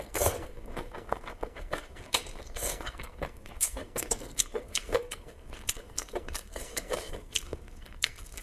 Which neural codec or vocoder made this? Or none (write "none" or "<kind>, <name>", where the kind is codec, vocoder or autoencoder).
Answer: codec, SNAC